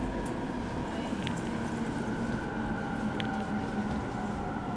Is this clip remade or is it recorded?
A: recorded